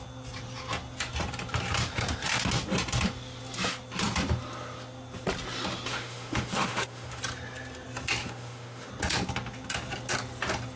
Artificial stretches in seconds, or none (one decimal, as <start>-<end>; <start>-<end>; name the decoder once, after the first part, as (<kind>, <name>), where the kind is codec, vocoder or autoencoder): 5.9-7.2 (autoencoder, DAC-VAE); 8.2-8.9